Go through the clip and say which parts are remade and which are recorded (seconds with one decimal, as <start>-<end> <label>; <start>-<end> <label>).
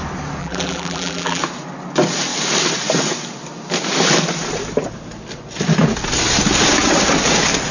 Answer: 0.0-0.4 recorded; 0.4-1.4 remade; 1.4-7.7 recorded